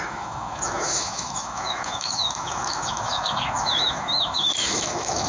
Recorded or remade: remade